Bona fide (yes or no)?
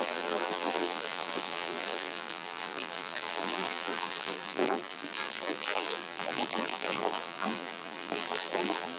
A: no